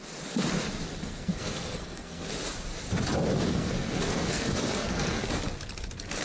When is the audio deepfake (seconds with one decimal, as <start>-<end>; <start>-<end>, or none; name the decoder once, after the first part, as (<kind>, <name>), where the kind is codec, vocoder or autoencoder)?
1.0-2.3 (codec, SNAC); 3.5-5.3

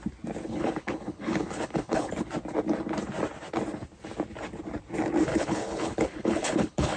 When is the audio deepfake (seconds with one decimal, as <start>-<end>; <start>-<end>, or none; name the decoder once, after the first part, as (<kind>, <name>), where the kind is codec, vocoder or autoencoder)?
0.4-2.1 (codec, HILCodec); 5.3-7.0

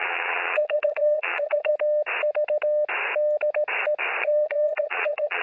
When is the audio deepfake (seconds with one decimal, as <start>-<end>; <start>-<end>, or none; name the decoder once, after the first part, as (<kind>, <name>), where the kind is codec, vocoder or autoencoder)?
0.0-1.7 (vocoder, Vocos); 4.2-5.4

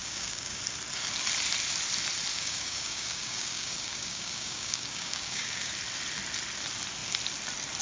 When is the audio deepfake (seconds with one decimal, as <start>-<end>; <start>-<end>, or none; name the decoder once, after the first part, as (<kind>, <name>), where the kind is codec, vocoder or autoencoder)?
0.0-0.6 (codec, DAC); 2.3-5.7